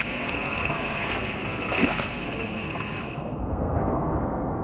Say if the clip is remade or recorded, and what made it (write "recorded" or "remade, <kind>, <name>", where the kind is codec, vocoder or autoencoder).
remade, codec, SNAC